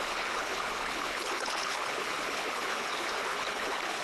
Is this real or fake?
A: fake